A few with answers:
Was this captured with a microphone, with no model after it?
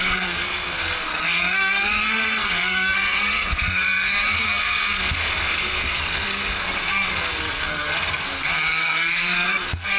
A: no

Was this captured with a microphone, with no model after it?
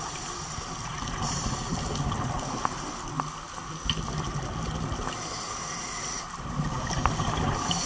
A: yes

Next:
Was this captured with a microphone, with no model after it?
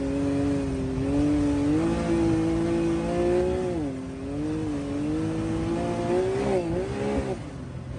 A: yes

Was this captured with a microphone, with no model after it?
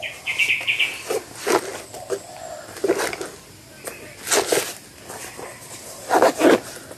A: yes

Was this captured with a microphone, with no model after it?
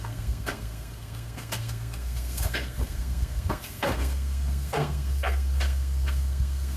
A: no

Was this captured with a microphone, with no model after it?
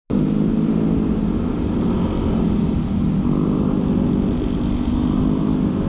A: yes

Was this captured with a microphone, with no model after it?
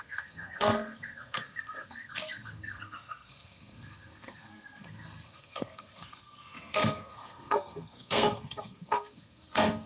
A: no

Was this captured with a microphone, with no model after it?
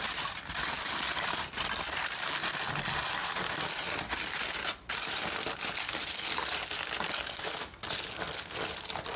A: yes